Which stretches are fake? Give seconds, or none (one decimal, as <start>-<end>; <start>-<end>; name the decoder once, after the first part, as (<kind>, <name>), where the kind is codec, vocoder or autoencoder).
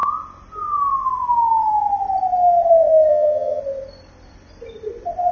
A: 3.1-3.6 (vocoder, HiFi-GAN)